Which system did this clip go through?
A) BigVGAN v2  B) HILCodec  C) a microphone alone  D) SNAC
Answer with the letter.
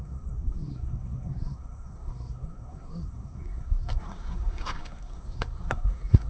D